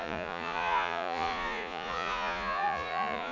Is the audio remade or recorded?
remade